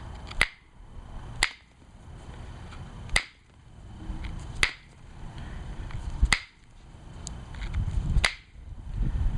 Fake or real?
real